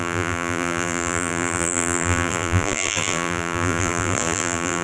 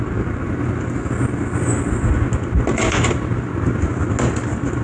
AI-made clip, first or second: first